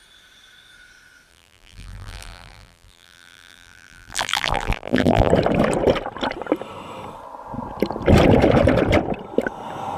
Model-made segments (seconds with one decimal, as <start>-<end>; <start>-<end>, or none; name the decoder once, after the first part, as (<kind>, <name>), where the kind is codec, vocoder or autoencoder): 1.3-5.3 (vocoder, BigVGAN v2)